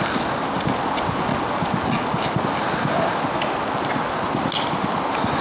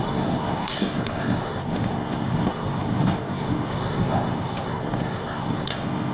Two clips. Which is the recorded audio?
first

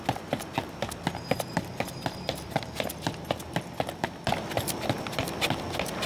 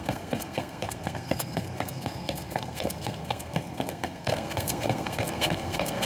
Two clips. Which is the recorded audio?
first